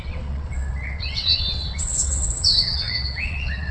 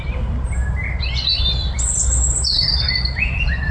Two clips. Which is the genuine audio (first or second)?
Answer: second